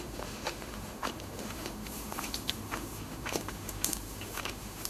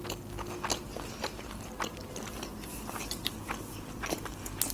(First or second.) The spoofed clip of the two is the first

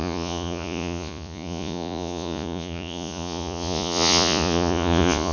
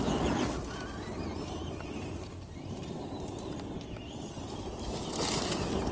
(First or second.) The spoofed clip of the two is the first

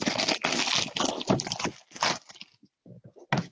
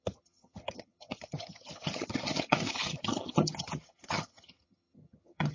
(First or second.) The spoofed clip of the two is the second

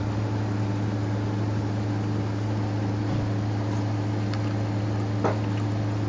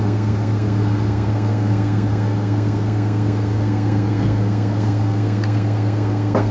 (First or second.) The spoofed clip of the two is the second